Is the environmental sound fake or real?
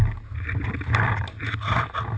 real